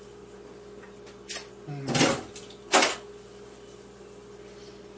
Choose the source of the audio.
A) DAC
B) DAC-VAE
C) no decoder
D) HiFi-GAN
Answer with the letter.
C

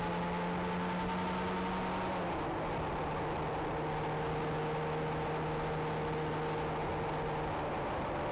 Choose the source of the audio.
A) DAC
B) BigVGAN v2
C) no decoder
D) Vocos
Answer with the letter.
C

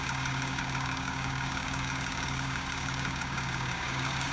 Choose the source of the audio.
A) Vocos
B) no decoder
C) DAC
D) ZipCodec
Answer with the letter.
C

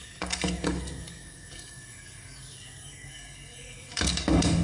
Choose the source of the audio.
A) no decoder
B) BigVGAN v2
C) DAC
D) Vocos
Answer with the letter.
C